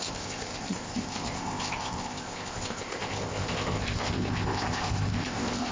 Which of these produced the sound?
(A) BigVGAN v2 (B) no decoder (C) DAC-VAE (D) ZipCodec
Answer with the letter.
D